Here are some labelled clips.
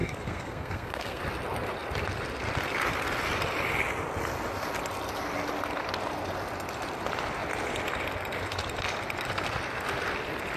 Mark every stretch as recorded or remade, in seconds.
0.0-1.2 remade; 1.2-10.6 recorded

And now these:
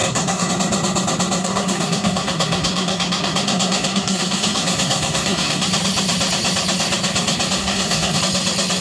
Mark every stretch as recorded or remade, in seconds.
0.0-0.5 remade; 0.5-1.4 recorded; 1.4-5.7 remade; 5.7-7.6 recorded; 7.6-8.2 remade; 8.2-8.8 recorded

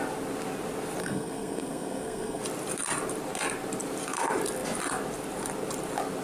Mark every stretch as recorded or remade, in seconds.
0.0-1.0 recorded; 1.0-2.4 remade; 2.4-6.2 recorded

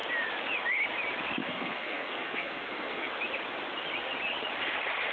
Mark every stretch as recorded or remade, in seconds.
0.0-1.4 recorded; 1.4-3.1 remade; 3.1-5.1 recorded